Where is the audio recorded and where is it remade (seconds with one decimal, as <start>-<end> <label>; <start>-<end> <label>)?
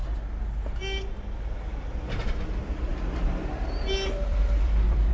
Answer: 0.0-4.3 recorded; 4.3-5.1 remade